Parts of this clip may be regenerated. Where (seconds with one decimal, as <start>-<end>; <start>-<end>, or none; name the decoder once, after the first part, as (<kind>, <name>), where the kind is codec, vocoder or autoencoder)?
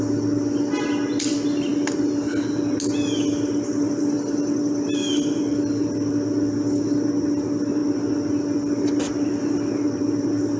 none